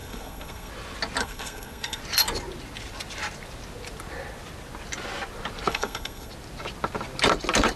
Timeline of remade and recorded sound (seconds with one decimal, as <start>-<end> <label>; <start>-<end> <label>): 0.0-0.7 remade; 0.7-1.2 recorded; 1.2-2.0 remade; 2.0-5.7 recorded; 5.7-6.3 remade; 6.3-7.8 recorded